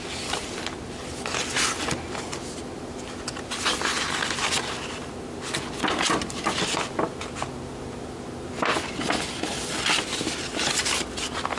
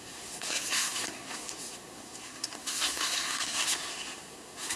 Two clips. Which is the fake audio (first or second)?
second